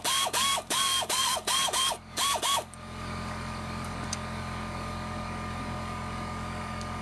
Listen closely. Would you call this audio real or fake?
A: fake